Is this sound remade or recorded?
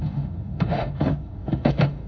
remade